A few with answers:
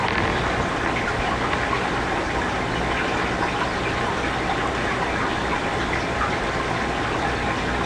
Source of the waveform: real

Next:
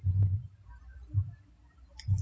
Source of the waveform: real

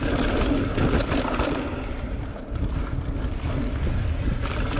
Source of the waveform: real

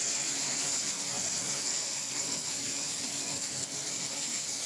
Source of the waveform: fake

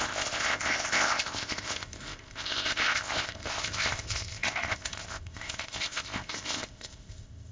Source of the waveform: fake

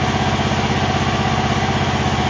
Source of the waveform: real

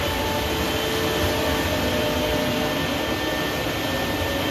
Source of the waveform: real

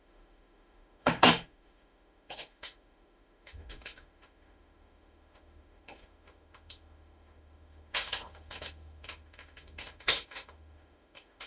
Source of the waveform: fake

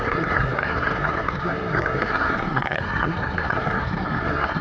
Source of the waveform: fake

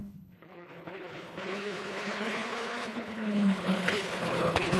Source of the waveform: fake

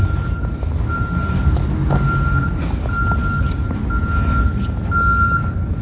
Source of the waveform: real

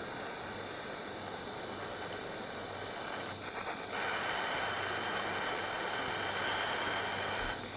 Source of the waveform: real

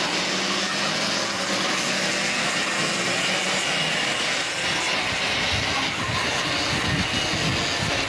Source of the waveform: real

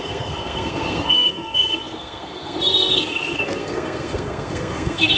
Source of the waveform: fake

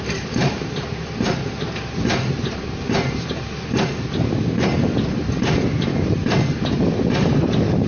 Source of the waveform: fake